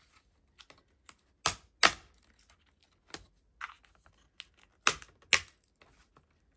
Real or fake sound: real